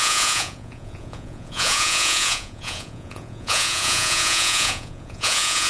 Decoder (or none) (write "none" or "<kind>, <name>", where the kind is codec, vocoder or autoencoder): vocoder, Vocos